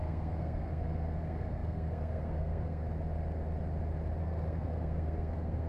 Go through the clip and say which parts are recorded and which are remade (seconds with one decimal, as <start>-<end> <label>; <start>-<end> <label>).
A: 0.0-2.8 remade; 2.8-4.2 recorded; 4.2-5.7 remade